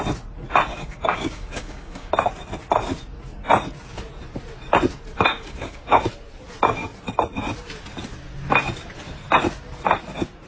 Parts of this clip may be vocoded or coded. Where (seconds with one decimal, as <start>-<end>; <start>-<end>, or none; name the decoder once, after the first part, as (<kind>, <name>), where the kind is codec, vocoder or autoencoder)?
0.7-2.1 (codec, DAC); 5.3-6.0